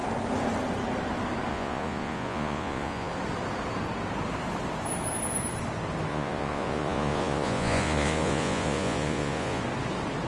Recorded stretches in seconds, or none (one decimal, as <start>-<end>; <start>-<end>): 0.0-1.5; 3.1-6.1; 9.6-10.3